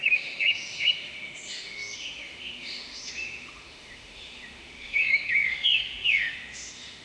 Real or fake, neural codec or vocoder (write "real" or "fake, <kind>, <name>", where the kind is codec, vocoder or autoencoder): fake, autoencoder, DAC-VAE